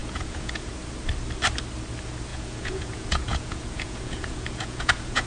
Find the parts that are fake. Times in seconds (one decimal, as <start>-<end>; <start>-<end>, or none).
0.0-0.7; 2.3-5.3